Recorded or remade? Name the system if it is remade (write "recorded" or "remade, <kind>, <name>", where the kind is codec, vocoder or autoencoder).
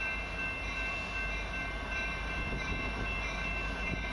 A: recorded